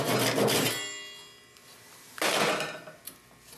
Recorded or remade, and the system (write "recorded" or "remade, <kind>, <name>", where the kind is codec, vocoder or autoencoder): recorded